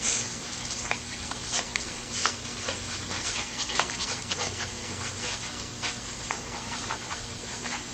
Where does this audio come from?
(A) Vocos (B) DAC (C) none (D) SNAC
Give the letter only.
D